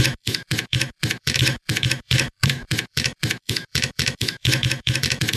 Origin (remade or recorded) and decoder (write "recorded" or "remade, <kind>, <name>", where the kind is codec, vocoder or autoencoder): remade, autoencoder, DAC-VAE